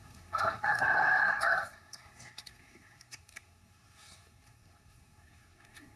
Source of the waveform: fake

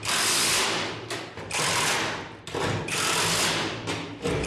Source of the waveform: real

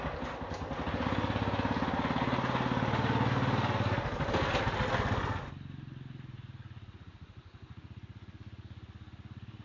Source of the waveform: real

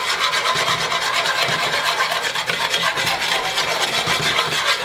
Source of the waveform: real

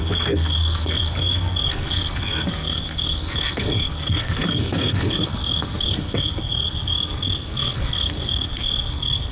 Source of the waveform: fake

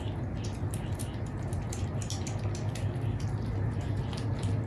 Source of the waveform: real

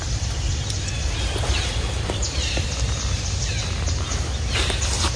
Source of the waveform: real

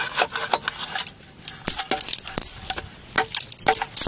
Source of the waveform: real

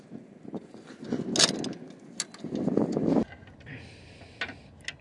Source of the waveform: real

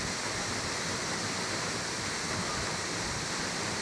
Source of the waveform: real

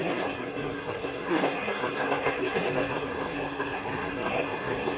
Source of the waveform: fake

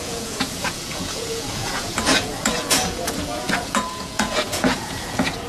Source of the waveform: fake